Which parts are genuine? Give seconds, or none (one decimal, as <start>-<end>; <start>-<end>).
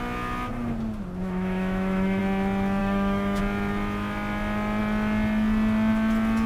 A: 0.0-1.2; 2.2-2.8; 3.4-6.5